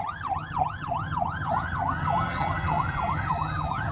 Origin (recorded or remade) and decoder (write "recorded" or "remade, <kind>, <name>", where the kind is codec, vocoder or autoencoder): remade, vocoder, HiFi-GAN